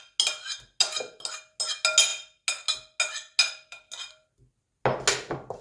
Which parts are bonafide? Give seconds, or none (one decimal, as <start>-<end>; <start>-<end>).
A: 0.0-5.6